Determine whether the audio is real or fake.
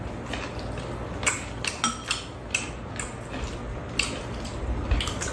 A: real